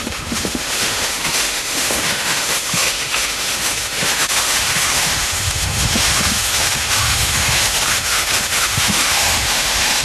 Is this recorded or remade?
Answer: remade